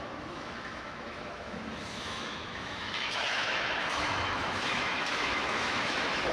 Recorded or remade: remade